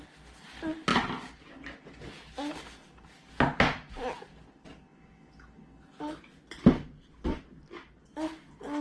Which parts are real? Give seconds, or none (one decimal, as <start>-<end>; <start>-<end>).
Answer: 0.0-8.8